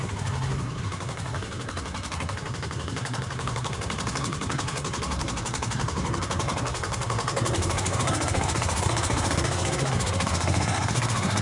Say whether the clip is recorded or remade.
remade